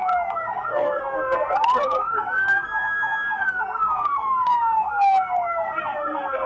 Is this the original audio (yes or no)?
no